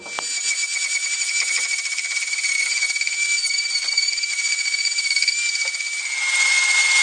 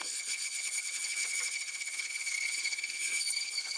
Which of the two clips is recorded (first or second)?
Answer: first